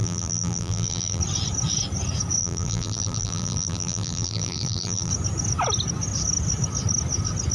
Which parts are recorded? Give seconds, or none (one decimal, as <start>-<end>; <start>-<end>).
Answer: 1.2-2.4; 5.1-7.5